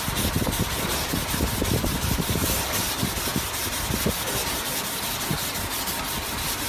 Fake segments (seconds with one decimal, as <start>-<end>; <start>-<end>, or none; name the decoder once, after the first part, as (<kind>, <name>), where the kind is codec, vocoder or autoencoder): 1.2-2.6 (vocoder, BigVGAN v2)